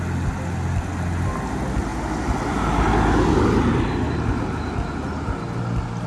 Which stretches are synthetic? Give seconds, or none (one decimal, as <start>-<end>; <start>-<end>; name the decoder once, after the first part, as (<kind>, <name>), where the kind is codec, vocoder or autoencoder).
none